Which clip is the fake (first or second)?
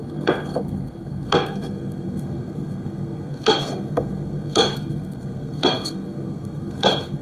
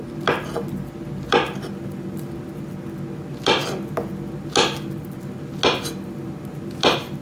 first